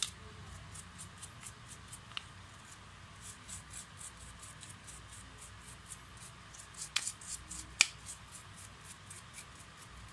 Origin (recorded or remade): recorded